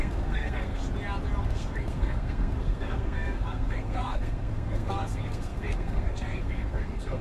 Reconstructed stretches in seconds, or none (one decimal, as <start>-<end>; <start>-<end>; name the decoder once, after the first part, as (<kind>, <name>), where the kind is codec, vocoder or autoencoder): 0.0-0.8 (codec, SNAC); 1.5-7.2